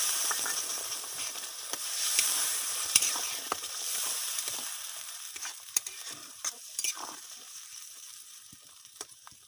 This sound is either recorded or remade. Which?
remade